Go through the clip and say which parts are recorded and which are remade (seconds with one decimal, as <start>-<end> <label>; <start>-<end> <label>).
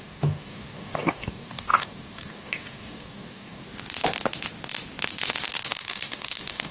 0.0-3.6 remade; 3.6-5.6 recorded; 5.6-6.7 remade